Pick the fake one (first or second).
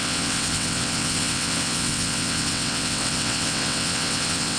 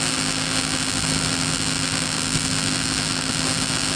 first